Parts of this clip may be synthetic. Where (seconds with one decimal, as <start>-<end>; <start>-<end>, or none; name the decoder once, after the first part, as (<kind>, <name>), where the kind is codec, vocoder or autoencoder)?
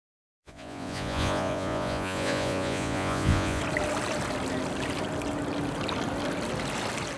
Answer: 0.0-3.6 (vocoder, Vocos)